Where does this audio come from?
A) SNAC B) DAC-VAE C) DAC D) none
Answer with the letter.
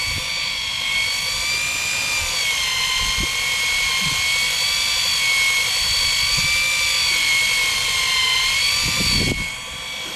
D